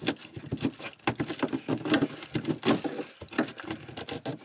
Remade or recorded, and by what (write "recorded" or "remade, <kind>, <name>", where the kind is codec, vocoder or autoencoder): recorded